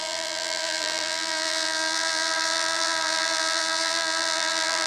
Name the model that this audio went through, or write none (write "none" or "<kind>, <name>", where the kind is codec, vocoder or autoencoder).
vocoder, BigVGAN v2